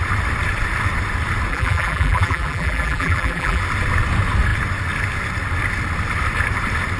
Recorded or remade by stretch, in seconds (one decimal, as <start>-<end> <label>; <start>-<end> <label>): 0.0-1.5 recorded; 1.5-3.6 remade; 3.6-7.0 recorded